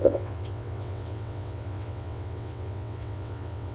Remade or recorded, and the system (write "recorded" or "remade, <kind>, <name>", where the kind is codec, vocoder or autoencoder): remade, vocoder, WaveNeXt